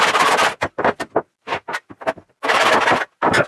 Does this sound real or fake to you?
real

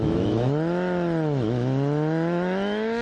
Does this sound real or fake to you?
fake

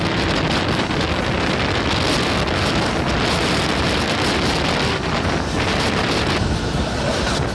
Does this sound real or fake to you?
real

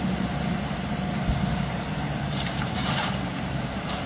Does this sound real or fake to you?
fake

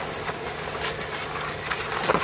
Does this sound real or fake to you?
real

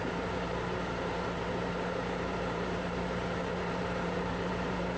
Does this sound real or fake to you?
fake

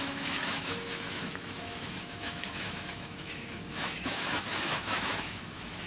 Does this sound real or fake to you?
fake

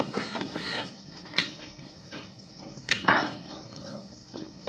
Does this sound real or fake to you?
fake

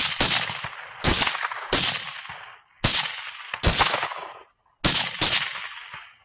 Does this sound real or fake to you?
real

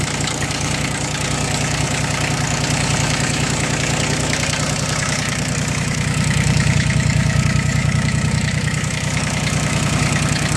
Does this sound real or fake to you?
fake